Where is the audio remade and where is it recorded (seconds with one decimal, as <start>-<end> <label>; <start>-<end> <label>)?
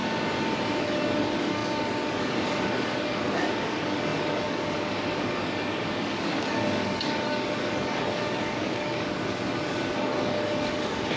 0.0-0.8 recorded; 0.8-11.2 remade